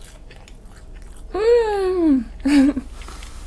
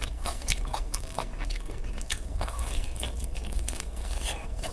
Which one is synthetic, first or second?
second